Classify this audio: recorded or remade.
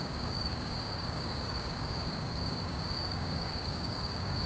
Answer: remade